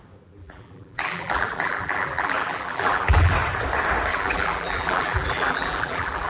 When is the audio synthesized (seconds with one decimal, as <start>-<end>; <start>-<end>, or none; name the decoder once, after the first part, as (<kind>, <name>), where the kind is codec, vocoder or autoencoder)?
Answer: 0.4-3.3 (vocoder, BigVGAN v2); 4.1-6.3